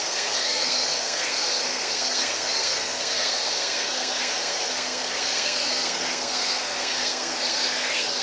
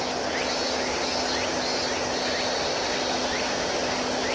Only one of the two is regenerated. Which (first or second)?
first